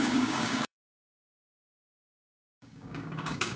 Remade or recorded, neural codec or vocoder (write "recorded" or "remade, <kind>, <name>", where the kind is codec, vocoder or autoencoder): remade, codec, DAC